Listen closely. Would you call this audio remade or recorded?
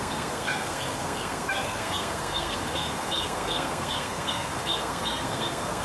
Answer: remade